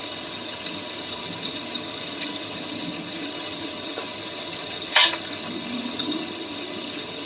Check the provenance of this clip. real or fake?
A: fake